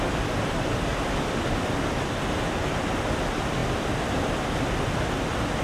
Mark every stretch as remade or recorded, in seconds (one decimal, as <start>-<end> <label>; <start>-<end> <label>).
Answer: 0.0-0.9 recorded; 0.9-2.6 remade; 2.6-5.6 recorded